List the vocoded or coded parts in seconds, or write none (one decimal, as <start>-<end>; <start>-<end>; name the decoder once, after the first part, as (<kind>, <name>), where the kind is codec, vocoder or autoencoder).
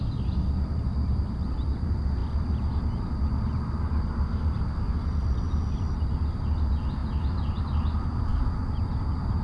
none